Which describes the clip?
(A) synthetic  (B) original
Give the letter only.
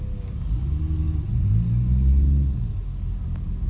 B